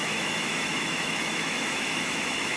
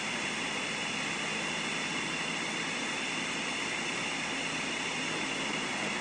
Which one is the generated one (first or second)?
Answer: first